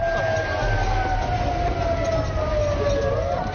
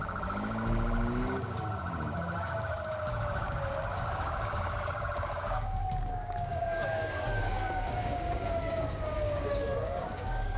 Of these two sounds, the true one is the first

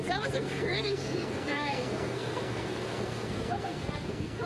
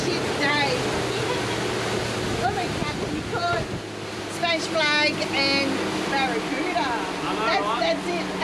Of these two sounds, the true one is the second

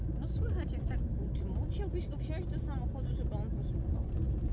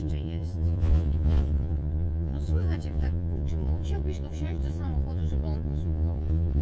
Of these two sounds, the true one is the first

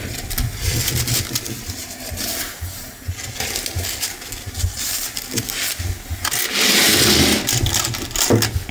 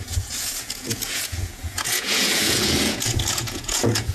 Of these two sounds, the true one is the first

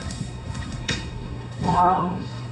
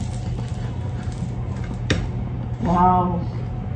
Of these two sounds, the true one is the second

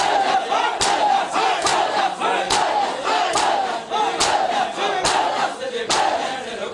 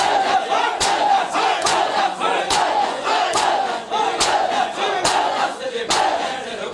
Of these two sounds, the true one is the first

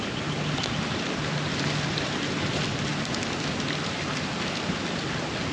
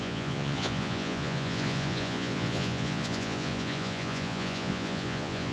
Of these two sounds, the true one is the first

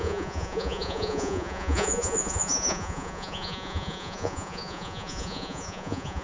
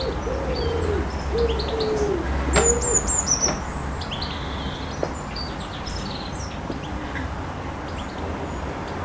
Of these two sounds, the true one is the second